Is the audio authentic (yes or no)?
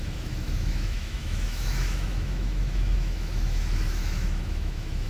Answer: no